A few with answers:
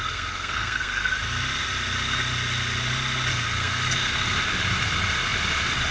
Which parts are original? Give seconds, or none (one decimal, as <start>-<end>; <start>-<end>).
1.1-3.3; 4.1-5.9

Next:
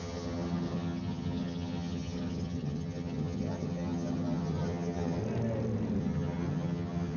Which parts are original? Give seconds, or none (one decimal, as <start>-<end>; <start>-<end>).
5.2-6.0

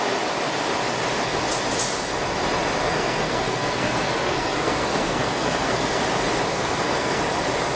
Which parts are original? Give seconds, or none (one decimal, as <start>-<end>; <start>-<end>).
0.0-2.8; 6.0-6.5; 7.2-7.8